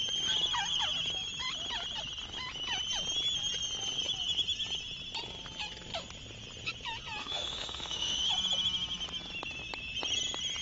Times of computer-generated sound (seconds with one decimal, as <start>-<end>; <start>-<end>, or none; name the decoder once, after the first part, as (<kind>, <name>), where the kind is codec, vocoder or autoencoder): 7.2-8.3 (autoencoder, DAC-VAE)